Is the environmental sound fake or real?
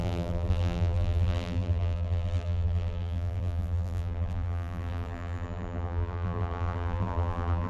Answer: fake